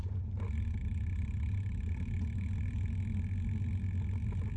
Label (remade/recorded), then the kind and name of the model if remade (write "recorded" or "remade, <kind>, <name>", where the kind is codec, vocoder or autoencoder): recorded